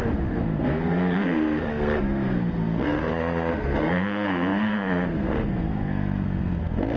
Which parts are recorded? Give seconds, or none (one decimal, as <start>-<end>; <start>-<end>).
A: none